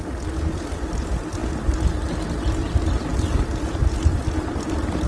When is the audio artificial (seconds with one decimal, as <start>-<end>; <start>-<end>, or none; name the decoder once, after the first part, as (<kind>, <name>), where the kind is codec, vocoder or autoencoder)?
none